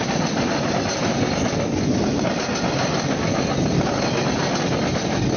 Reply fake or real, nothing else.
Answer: real